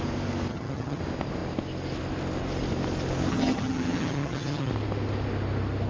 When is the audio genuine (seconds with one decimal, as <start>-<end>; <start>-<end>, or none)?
0.0-0.5; 1.0-3.3; 4.7-5.9